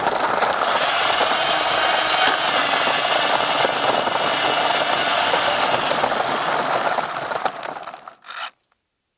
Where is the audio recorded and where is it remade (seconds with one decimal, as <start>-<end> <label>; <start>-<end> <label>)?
0.0-5.1 recorded; 5.1-5.7 remade; 5.7-9.2 recorded